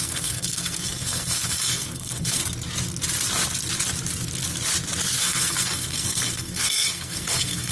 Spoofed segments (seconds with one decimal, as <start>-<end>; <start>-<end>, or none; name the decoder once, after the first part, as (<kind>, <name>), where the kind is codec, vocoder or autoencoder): 0.0-2.4 (codec, SNAC); 5.2-7.7